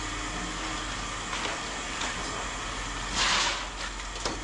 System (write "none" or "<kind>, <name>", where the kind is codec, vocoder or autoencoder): none